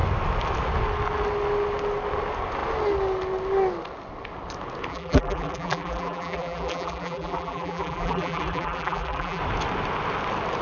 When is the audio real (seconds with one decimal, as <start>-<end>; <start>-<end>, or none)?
0.0-4.9; 9.4-10.6